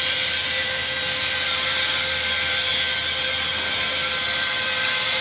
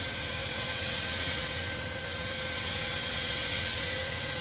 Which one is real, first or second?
first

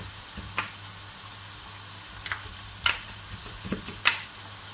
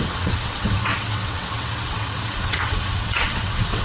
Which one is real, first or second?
first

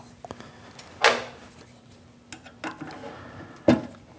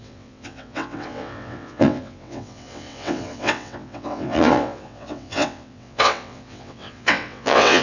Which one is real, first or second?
first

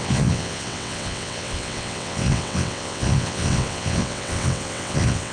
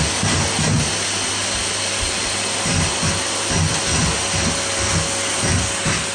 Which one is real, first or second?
second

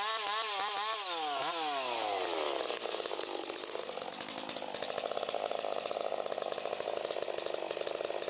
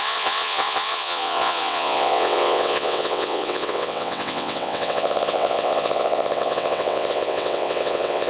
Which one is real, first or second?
first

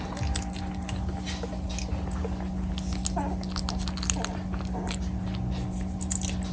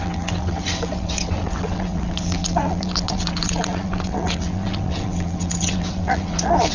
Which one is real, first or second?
first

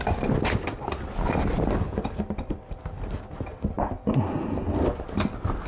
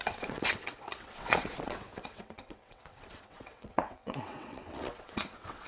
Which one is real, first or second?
first